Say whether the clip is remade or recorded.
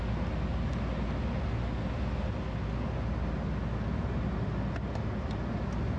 recorded